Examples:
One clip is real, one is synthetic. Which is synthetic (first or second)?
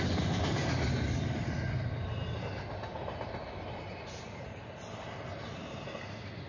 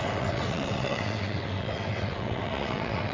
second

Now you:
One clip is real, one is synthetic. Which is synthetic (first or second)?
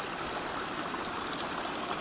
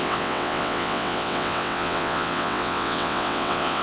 second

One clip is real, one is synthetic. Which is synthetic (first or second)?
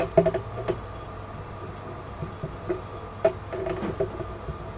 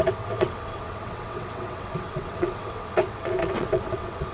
second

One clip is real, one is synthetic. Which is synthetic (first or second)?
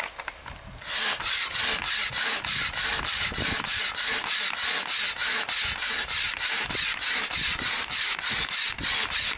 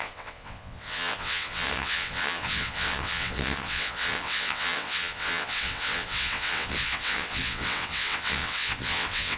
second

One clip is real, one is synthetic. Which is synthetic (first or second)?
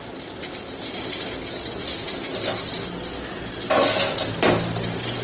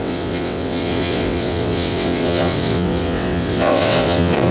second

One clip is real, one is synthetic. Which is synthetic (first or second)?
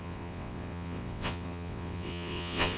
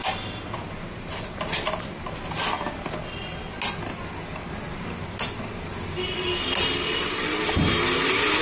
first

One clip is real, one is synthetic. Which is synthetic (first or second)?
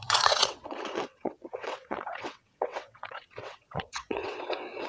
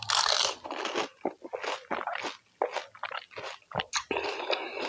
first